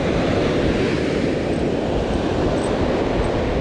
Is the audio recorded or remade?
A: recorded